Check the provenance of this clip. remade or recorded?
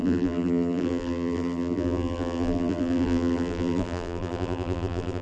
remade